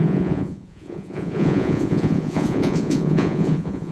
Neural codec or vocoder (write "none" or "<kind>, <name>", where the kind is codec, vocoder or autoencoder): vocoder, Vocos